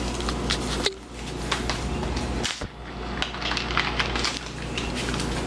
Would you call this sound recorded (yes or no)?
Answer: yes